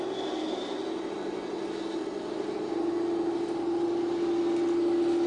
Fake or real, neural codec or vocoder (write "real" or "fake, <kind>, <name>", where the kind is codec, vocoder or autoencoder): real